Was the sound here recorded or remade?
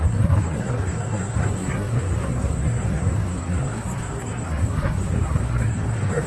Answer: remade